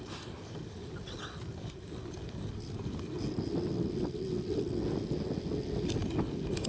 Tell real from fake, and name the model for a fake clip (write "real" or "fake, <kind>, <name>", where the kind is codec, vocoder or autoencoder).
real